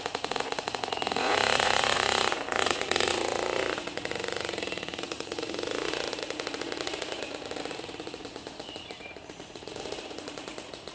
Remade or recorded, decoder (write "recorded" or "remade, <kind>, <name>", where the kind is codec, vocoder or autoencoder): remade, vocoder, Vocos